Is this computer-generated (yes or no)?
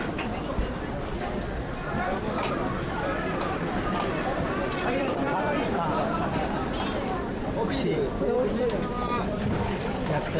yes